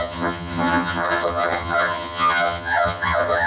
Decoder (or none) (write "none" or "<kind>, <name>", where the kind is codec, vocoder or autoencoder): vocoder, HiFi-GAN